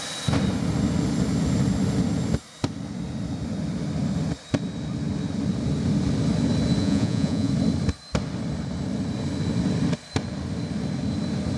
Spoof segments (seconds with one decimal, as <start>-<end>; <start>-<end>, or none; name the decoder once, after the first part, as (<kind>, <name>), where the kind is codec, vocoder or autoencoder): 6.8-7.5 (vocoder, Vocos)